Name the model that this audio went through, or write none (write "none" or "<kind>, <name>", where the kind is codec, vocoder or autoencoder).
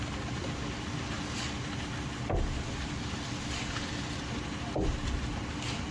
none